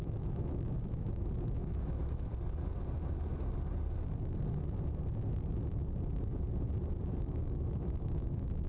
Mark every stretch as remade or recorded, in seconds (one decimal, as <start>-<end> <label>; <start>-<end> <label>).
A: 0.0-2.3 remade; 2.3-7.1 recorded; 7.1-8.7 remade